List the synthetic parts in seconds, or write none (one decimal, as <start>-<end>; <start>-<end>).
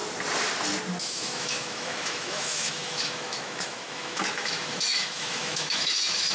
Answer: 1.1-6.3